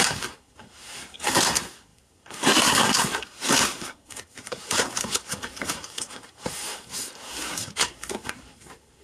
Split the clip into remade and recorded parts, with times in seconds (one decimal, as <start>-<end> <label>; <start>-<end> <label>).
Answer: 0.0-9.0 remade